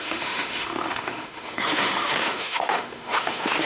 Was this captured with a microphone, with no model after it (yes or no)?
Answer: no